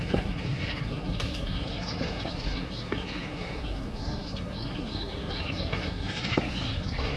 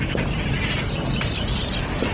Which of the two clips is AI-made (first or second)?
first